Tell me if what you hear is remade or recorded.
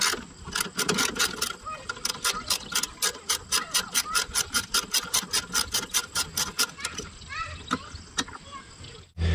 recorded